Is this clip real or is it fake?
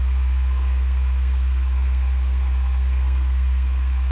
fake